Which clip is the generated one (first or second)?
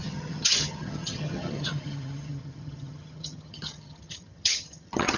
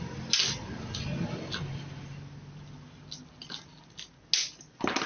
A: first